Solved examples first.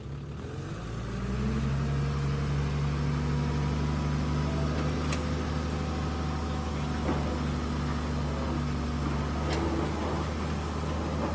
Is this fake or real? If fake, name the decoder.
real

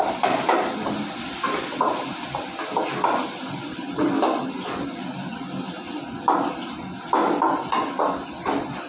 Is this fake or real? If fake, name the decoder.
real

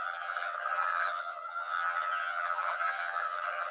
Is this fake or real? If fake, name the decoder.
fake, vocoder, HiFi-GAN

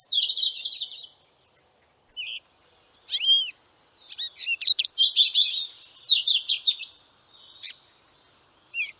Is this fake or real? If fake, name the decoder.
real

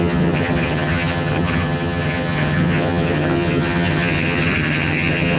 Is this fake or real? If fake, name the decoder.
fake, vocoder, HiFi-GAN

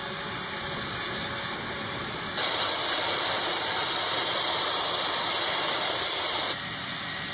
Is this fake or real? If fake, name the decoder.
real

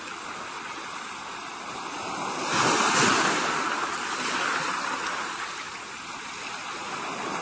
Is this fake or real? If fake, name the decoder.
real